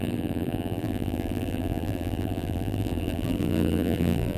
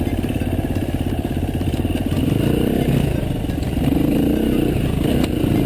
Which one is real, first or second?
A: second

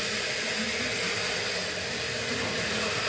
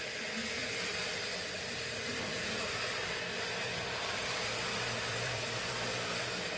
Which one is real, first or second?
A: first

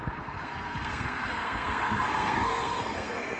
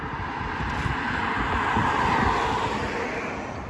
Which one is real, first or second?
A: second